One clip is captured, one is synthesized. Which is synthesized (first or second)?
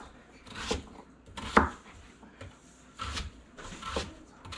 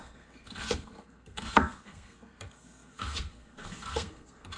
second